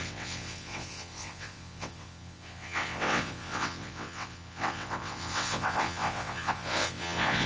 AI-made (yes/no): yes